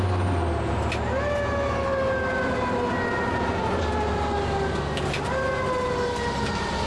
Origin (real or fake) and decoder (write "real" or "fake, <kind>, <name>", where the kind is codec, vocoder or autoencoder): real